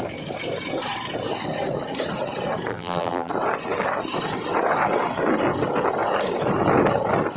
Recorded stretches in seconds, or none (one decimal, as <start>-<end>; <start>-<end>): 0.0-2.7; 3.3-7.4